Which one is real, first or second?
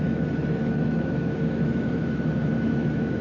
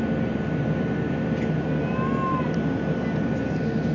second